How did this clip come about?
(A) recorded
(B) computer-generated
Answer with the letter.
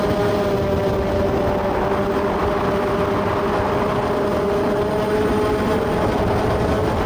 A